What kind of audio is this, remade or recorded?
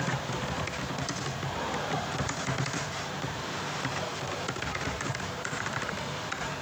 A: remade